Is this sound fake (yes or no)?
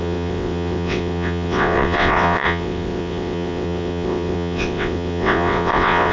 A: yes